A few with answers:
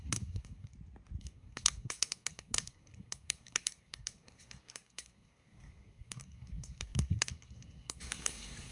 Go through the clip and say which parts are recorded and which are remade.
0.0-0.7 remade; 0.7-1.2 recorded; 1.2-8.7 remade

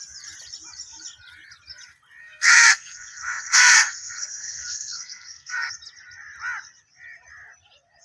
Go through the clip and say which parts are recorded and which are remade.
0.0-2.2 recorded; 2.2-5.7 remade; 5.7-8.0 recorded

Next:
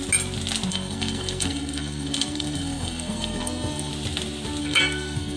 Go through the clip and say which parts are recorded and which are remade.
0.0-0.7 recorded; 0.7-3.9 remade; 3.9-4.6 recorded; 4.6-5.4 remade

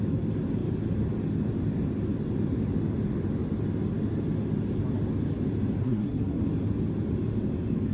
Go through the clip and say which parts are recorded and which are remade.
0.0-5.8 recorded; 5.8-6.4 remade; 6.4-7.9 recorded